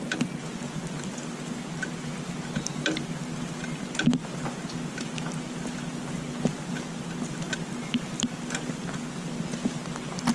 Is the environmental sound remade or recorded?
recorded